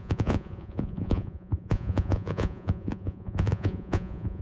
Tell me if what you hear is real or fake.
fake